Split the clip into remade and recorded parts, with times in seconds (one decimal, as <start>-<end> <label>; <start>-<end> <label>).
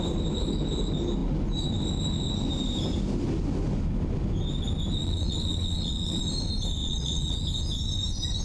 0.0-5.0 recorded; 5.0-6.2 remade; 6.2-6.8 recorded; 6.8-7.4 remade; 7.4-8.4 recorded